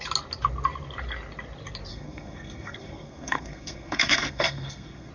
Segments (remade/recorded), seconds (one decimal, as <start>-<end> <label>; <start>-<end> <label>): 0.0-1.9 recorded; 1.9-5.1 remade